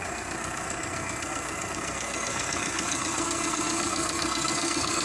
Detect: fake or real fake